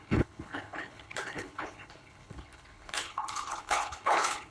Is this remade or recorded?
remade